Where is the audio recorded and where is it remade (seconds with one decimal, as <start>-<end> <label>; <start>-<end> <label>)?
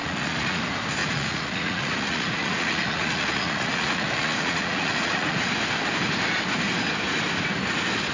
0.0-0.6 remade; 0.6-1.0 recorded; 1.0-5.5 remade; 5.5-8.1 recorded